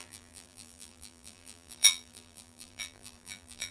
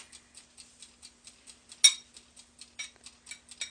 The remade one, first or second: first